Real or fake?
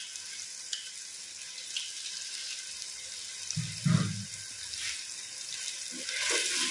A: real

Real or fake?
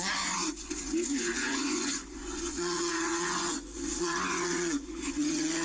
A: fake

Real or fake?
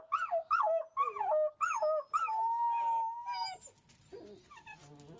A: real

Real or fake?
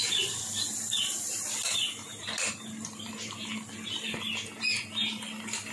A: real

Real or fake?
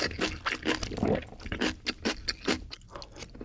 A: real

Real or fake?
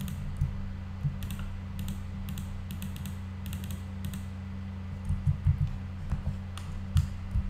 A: real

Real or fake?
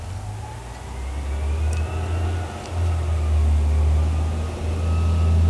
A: real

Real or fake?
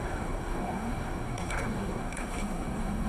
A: fake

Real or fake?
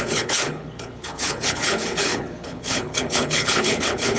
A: fake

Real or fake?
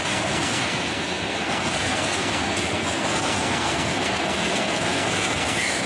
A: fake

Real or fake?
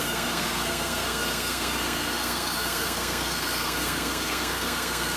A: fake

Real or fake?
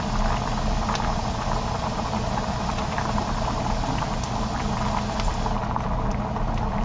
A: real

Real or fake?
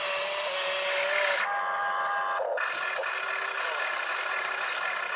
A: real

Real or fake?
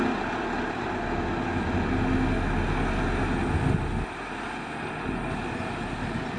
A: real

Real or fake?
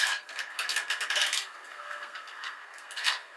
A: fake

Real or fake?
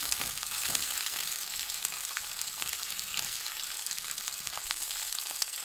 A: fake